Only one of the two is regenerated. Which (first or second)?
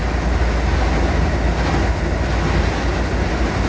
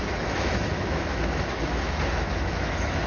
second